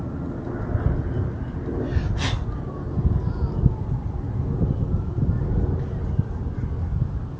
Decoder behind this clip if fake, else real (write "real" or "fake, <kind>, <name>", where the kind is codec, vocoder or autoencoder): real